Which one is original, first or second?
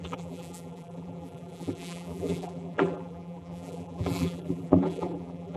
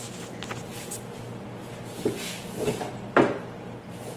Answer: second